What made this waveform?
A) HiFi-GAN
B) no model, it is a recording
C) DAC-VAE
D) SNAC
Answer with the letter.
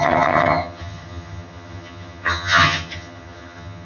A